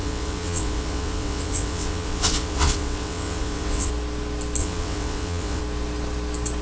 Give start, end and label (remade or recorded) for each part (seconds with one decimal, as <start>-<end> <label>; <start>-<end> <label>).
0.0-3.9 remade; 3.9-4.6 recorded; 4.6-5.6 remade; 5.6-6.6 recorded